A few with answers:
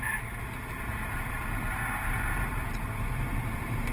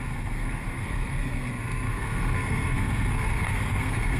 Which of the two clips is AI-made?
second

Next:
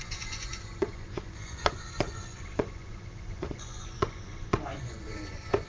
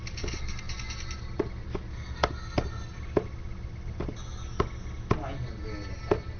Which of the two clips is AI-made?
first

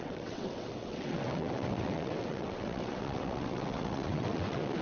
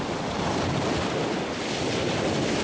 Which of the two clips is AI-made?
first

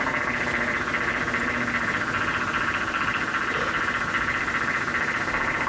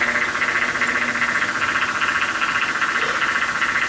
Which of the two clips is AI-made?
first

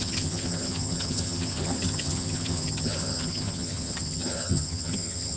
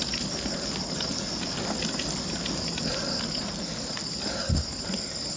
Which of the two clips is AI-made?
first